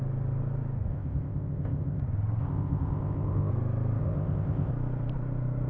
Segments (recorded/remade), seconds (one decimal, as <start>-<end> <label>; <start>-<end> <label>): 0.0-0.9 recorded; 0.9-2.0 remade; 2.0-2.4 recorded; 2.4-3.5 remade; 3.5-4.0 recorded; 4.0-4.7 remade; 4.7-5.7 recorded